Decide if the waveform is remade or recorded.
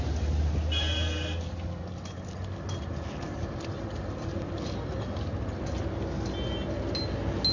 recorded